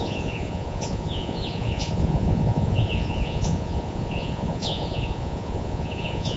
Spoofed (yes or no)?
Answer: yes